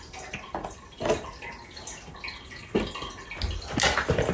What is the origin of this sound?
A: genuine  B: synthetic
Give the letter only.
A